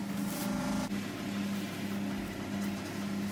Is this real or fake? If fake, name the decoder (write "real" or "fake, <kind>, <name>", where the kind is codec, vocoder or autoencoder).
real